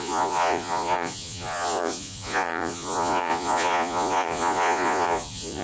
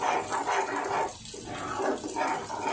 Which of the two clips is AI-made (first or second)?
first